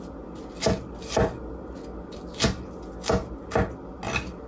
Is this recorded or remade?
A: recorded